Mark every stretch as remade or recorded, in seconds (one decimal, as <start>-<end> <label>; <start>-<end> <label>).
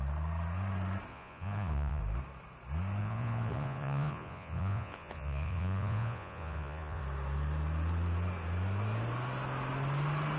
0.0-1.1 recorded; 1.1-2.0 remade; 2.0-3.0 recorded; 3.0-7.0 remade; 7.0-10.4 recorded